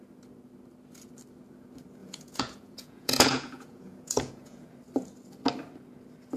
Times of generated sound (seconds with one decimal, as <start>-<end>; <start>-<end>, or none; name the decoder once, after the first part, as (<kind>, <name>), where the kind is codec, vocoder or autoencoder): 2.0-4.7 (vocoder, Vocos)